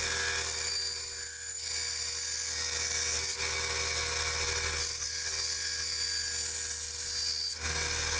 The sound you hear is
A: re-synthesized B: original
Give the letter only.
B